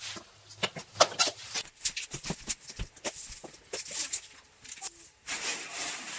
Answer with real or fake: real